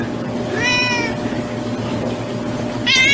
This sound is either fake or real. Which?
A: real